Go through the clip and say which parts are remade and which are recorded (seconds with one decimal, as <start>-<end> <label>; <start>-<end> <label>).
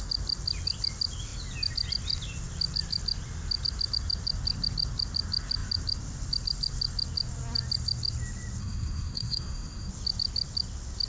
0.0-8.6 recorded; 8.6-9.9 remade; 9.9-11.1 recorded